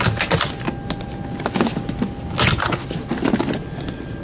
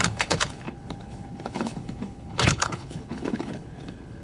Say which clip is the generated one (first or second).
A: second